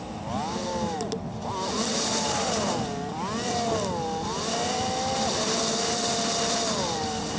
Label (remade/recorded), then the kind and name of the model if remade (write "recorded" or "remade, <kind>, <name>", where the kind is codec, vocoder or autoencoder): recorded